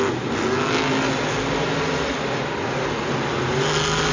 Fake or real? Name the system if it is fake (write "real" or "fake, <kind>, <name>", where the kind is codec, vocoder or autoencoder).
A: real